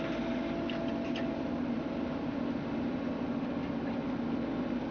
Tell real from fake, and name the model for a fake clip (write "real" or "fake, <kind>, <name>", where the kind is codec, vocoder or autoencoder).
real